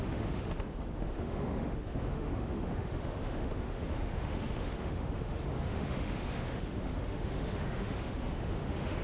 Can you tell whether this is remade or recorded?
remade